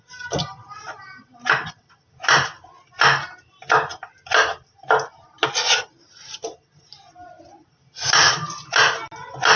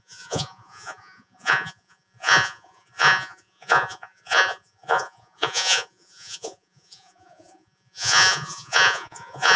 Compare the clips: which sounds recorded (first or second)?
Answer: first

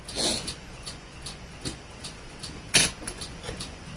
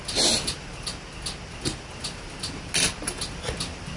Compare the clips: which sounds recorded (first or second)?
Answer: second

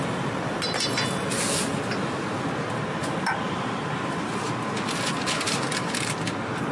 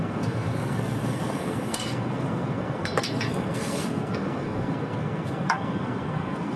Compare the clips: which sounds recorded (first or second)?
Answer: first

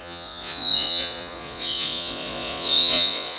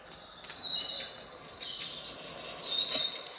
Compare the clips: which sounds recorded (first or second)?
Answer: second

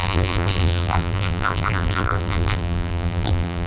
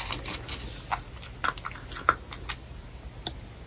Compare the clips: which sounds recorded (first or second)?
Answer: second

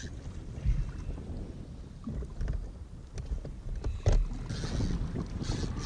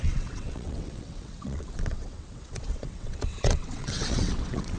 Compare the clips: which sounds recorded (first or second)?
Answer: first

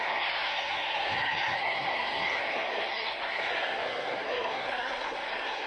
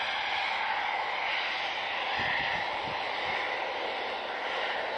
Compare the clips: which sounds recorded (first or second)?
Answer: second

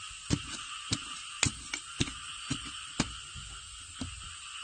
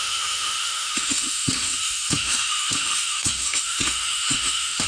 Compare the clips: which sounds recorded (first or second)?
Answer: first